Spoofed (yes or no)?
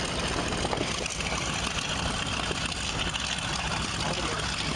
no